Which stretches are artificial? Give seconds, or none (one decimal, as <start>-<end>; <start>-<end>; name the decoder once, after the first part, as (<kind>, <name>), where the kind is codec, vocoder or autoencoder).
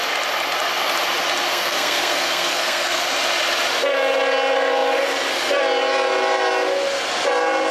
1.5-3.0 (codec, SNAC)